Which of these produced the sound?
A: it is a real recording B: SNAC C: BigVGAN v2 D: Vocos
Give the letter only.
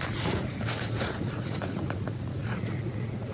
D